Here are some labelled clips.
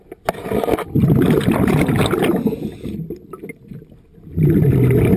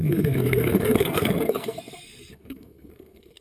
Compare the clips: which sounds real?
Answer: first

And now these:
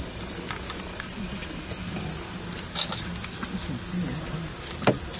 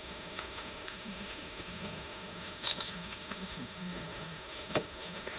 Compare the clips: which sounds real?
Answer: first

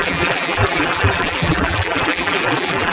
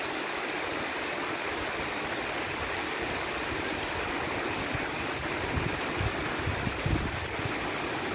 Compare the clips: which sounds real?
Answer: second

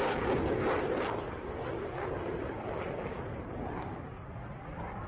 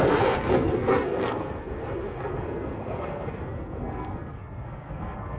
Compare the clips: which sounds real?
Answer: first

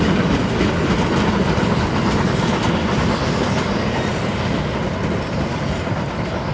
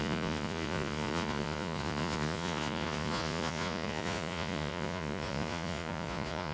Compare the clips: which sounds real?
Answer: first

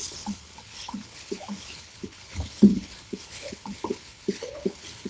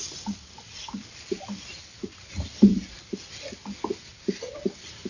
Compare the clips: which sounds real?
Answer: second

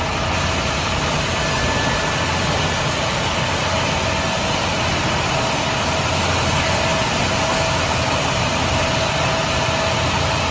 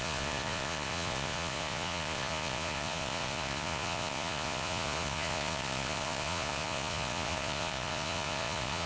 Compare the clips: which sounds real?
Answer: first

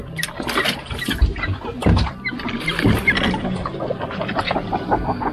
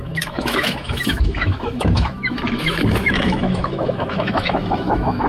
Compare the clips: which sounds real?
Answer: first